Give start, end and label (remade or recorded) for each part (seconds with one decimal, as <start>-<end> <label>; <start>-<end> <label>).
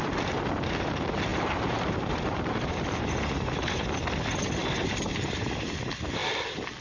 0.0-1.3 recorded; 1.3-3.8 remade; 3.8-4.6 recorded; 4.6-5.8 remade; 5.8-6.8 recorded